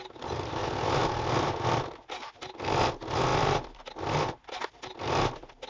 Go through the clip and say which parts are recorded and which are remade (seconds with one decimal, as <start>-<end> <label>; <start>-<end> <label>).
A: 0.0-5.7 recorded